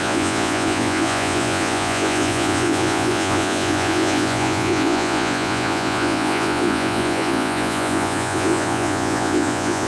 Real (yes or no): no